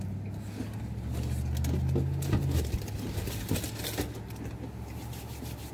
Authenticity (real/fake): real